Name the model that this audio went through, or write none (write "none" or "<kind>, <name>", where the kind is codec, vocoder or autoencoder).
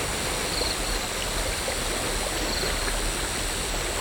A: none